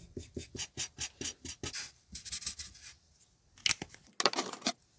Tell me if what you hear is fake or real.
real